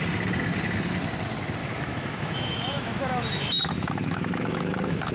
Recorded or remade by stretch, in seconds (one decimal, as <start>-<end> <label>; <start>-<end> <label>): 0.0-1.6 recorded; 1.6-5.1 remade